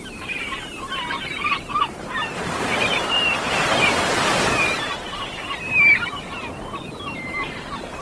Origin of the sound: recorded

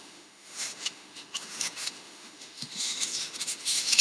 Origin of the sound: remade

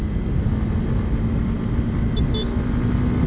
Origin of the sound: recorded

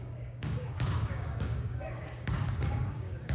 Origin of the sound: remade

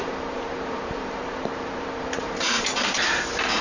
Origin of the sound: remade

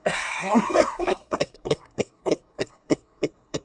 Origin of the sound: remade